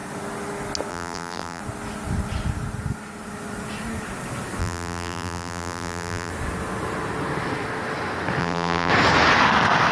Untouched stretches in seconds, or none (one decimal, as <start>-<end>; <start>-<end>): 0.0-0.9; 1.6-4.6; 6.3-8.4; 8.9-9.9